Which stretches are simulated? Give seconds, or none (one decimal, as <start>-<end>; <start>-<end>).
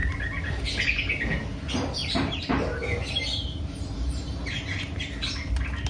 2.0-5.0